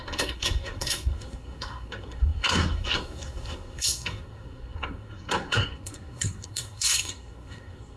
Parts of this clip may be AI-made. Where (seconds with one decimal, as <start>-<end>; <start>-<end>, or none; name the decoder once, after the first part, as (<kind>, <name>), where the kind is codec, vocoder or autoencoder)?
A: 0.0-8.0 (codec, SNAC)